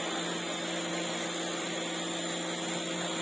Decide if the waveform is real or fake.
real